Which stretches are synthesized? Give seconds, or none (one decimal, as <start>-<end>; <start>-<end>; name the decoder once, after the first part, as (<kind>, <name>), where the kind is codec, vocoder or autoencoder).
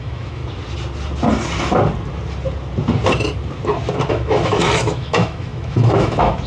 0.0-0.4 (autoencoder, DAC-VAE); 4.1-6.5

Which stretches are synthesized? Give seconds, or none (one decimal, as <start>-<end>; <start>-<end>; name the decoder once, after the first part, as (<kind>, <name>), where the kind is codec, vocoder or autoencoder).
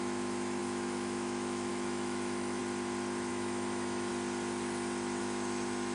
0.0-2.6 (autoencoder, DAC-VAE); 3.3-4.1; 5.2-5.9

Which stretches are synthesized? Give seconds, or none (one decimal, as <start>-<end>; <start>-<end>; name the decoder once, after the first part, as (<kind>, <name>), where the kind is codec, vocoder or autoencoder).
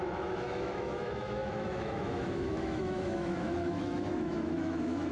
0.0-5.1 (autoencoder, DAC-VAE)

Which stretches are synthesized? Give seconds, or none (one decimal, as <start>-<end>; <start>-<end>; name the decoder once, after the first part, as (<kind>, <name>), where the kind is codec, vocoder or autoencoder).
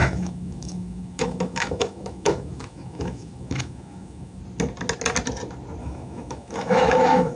0.0-4.4 (autoencoder, DAC-VAE); 5.8-7.4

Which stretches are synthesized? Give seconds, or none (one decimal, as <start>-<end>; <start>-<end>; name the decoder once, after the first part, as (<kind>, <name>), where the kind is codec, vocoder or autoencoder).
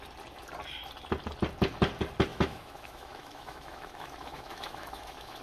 2.3-5.4 (autoencoder, DAC-VAE)